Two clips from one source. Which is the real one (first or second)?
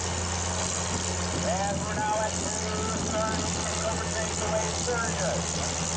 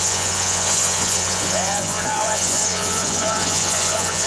first